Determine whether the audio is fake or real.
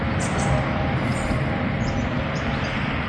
fake